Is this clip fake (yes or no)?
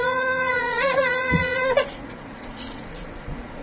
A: yes